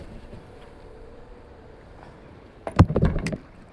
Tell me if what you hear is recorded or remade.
remade